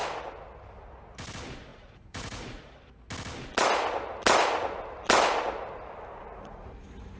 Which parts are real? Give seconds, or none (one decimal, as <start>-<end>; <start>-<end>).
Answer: 0.0-1.7; 2.7-6.2; 6.7-7.2